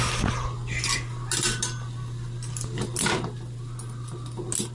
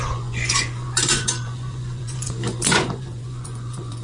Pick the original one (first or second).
first